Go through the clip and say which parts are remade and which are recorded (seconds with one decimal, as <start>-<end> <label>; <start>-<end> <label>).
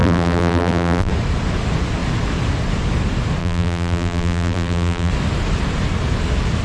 0.0-1.1 remade; 1.1-3.4 recorded; 3.4-5.1 remade; 5.1-6.6 recorded